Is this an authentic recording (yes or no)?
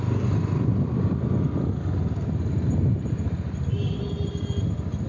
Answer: yes